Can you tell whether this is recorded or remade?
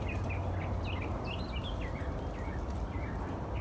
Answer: recorded